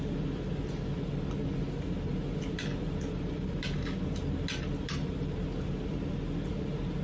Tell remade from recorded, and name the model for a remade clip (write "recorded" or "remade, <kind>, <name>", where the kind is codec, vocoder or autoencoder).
recorded